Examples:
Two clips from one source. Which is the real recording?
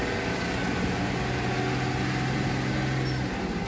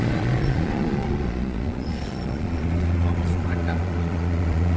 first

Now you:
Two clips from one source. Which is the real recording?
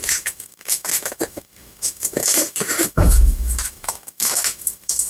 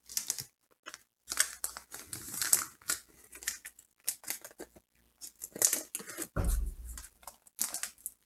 second